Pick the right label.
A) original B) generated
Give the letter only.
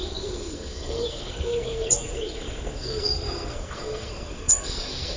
B